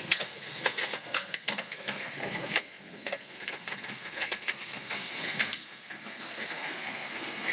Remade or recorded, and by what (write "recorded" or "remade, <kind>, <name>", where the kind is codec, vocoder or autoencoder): remade, codec, SNAC